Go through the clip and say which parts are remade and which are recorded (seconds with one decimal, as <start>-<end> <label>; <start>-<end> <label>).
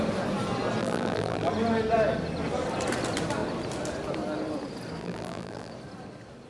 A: 0.0-0.8 recorded; 0.8-1.5 remade; 1.5-5.0 recorded; 5.0-5.7 remade; 5.7-6.5 recorded